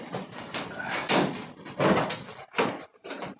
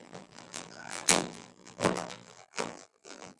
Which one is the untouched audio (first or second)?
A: first